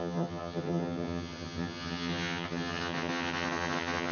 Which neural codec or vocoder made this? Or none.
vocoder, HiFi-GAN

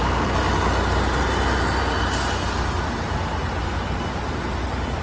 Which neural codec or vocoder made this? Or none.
none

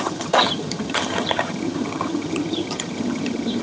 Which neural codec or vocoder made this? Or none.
vocoder, HiFi-GAN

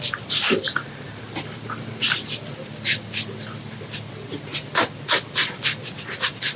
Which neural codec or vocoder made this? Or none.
none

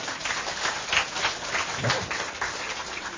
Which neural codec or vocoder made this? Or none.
none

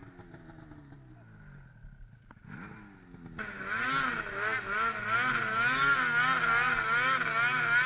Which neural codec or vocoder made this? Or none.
none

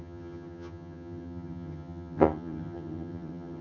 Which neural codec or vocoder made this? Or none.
vocoder, HiFi-GAN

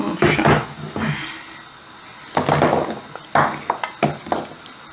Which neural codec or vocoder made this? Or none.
none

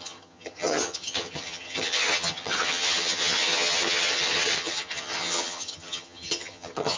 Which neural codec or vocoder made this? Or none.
vocoder, HiFi-GAN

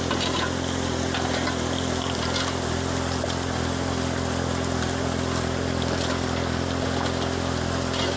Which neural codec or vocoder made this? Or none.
none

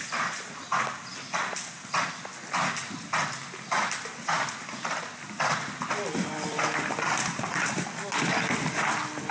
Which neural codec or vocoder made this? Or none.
none